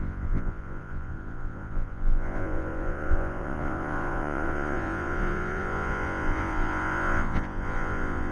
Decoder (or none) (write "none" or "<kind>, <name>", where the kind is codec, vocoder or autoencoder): vocoder, Vocos